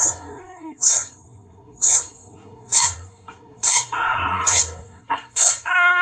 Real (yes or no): no